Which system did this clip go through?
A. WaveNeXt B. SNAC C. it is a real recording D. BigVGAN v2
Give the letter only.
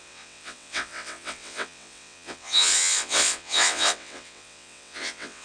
A